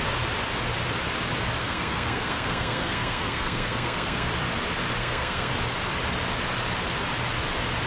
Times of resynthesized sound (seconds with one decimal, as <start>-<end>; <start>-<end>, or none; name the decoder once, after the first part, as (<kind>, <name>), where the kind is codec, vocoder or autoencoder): 1.6-4.3 (codec, SNAC); 5.0-5.5

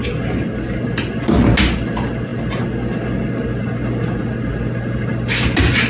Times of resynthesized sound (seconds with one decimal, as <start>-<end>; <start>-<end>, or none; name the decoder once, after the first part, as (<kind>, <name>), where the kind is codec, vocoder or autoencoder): none

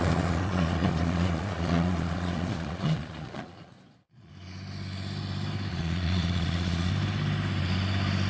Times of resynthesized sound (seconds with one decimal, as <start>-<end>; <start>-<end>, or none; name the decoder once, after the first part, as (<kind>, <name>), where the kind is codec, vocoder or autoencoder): 0.0-4.3 (vocoder, Vocos); 5.7-6.9

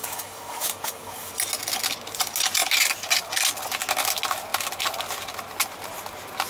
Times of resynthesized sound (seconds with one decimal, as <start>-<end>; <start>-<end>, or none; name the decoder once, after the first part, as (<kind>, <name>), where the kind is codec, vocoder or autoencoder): 0.0-1.3 (codec, DAC)

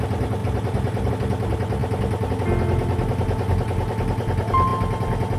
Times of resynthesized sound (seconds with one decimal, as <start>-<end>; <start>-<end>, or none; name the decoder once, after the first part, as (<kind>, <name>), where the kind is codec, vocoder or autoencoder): none

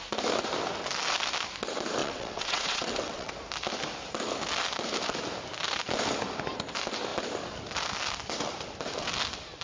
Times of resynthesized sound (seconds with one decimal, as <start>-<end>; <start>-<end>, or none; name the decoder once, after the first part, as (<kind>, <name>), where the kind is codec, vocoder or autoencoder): 2.0-3.3 (vocoder, WaveNeXt)

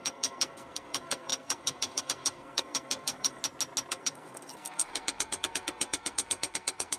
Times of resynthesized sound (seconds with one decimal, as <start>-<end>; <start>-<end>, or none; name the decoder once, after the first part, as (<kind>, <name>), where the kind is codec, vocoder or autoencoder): 0.0-3.4 (codec, SNAC); 3.9-7.0

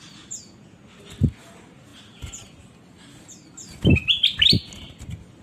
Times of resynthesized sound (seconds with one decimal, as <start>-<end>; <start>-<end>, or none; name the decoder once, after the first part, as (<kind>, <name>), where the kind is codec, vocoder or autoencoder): none